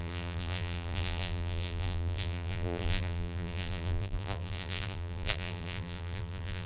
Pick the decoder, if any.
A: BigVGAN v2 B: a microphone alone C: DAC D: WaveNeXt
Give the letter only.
A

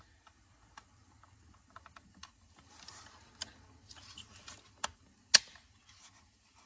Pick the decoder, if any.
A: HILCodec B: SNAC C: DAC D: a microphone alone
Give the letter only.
D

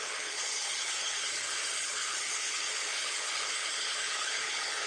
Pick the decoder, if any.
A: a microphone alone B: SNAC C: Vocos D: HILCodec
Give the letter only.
D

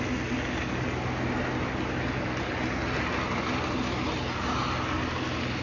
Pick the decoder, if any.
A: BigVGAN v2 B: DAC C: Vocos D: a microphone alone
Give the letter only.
D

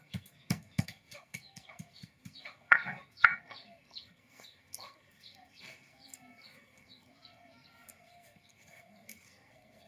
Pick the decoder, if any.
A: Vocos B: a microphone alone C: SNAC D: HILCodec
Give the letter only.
C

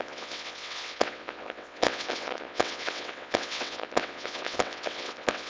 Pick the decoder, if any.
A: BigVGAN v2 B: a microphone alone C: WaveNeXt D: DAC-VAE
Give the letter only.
C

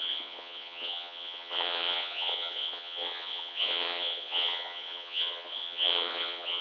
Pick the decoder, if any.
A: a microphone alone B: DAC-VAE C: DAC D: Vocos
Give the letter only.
D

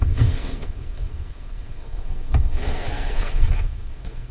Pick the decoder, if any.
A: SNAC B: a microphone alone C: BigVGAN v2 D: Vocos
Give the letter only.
A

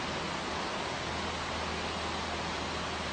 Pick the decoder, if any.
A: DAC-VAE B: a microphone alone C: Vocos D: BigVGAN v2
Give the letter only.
B